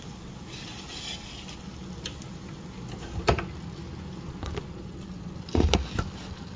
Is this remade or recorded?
recorded